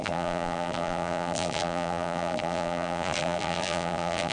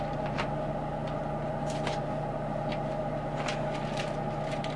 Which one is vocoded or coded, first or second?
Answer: first